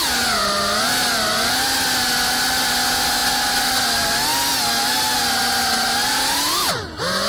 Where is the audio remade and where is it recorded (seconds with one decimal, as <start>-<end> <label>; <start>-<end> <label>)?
0.0-7.3 recorded